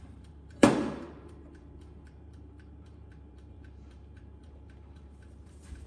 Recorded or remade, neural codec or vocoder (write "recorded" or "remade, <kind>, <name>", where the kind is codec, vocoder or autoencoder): remade, vocoder, BigVGAN v2